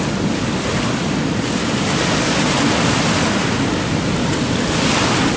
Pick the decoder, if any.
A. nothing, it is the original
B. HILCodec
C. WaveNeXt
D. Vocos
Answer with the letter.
A